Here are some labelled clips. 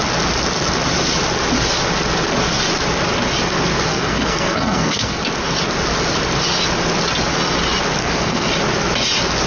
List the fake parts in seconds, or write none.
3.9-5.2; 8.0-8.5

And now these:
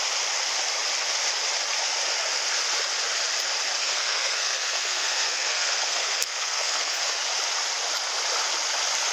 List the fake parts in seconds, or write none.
3.8-7.1